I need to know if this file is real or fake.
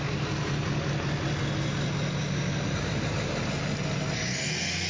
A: real